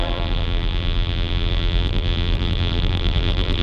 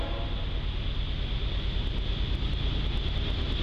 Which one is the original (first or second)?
second